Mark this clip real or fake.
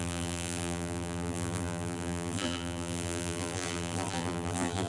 fake